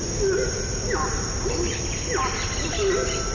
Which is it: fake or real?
real